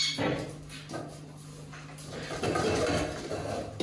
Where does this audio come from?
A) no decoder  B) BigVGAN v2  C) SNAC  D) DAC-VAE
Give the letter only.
A